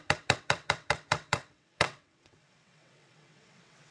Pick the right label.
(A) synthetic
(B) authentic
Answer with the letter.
A